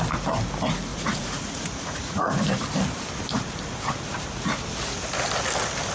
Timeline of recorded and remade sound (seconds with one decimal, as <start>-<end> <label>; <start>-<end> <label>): 0.0-0.9 recorded; 0.9-2.4 remade; 2.4-5.9 recorded